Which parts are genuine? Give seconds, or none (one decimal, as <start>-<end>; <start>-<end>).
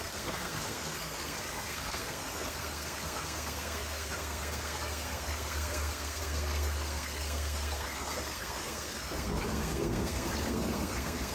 none